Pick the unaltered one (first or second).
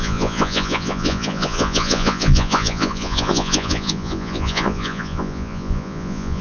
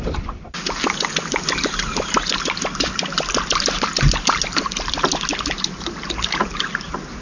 second